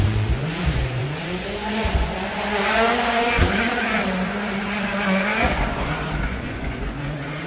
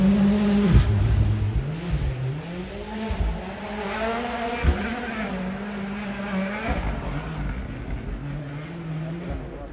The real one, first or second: second